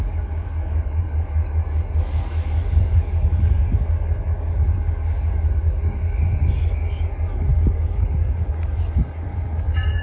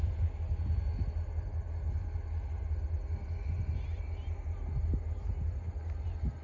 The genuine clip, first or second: second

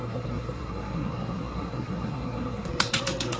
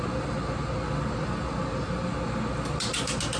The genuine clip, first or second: second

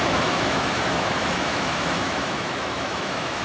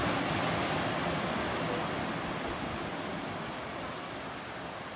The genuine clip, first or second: second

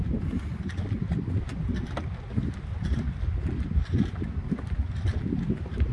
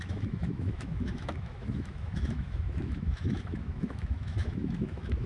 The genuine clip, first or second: first